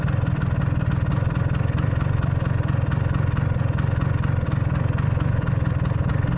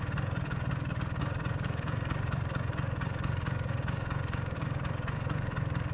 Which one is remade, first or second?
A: second